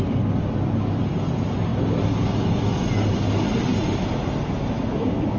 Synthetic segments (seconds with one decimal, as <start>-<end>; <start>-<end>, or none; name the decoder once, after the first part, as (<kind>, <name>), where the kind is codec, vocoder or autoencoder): none